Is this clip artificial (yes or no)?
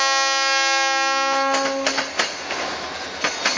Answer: no